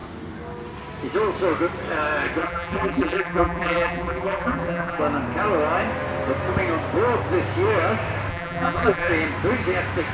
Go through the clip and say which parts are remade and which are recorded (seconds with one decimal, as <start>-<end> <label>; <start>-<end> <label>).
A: 0.0-2.4 recorded; 2.4-5.0 remade; 5.0-8.3 recorded; 8.3-9.1 remade; 9.1-10.1 recorded